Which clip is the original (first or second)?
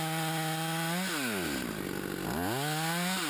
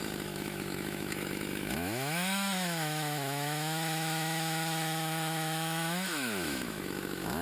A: first